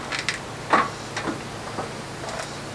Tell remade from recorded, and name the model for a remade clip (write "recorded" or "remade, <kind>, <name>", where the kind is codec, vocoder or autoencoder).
recorded